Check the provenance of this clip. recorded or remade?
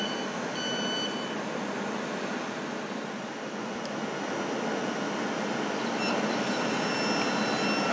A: recorded